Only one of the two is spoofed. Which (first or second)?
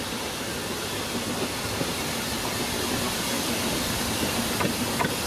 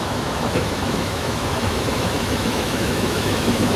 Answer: second